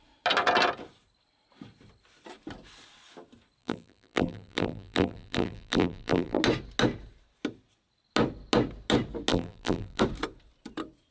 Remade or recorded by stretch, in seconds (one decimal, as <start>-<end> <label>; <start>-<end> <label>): 0.0-3.6 recorded; 3.6-6.4 remade; 6.4-9.3 recorded; 9.3-10.0 remade; 10.0-11.1 recorded